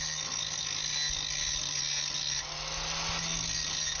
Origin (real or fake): real